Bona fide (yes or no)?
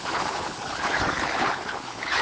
no